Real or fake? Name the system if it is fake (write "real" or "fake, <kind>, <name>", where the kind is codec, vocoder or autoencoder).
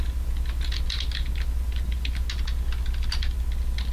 real